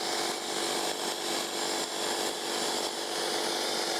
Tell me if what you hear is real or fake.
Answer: real